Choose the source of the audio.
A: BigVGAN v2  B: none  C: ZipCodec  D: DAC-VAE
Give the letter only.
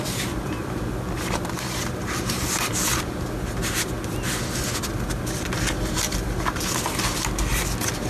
A